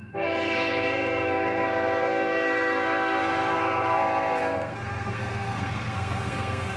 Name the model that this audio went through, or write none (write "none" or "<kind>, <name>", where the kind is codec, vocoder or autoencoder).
codec, SNAC